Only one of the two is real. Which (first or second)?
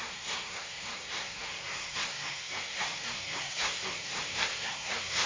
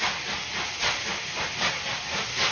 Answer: second